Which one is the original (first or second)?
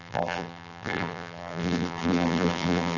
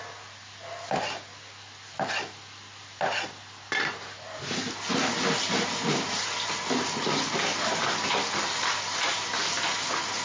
second